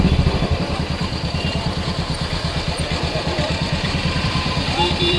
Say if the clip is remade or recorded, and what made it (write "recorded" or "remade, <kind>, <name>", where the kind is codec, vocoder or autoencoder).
remade, vocoder, BigVGAN v2